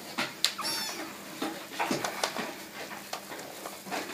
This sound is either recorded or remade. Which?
recorded